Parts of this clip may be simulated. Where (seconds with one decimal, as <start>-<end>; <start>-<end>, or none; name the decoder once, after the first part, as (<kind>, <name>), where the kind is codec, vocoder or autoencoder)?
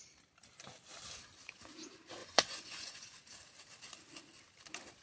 2.2-3.2 (vocoder, Vocos)